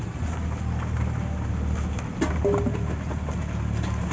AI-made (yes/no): no